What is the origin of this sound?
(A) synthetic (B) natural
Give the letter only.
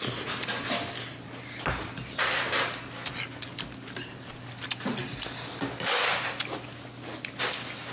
B